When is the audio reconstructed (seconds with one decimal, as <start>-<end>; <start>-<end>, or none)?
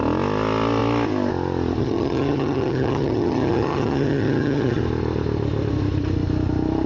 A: 1.8-4.8